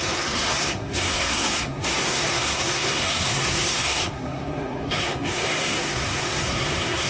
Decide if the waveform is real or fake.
fake